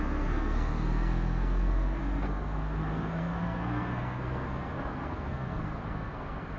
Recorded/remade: remade